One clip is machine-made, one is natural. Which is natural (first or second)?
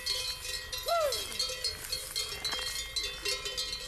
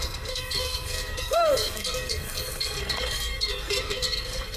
first